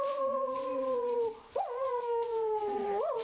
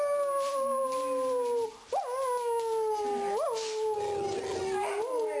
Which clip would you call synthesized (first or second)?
first